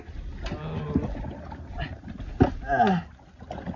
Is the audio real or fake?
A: real